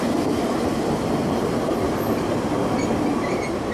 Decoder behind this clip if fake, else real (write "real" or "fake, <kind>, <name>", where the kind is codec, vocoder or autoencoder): fake, vocoder, BigVGAN v2